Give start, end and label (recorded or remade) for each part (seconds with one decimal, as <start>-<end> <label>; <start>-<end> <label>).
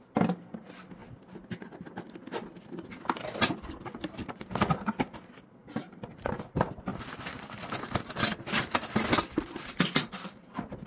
0.0-10.9 recorded